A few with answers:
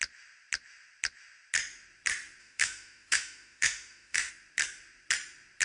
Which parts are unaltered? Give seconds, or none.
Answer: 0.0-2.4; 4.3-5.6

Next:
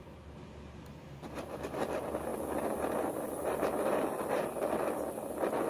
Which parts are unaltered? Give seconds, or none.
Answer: 0.0-5.7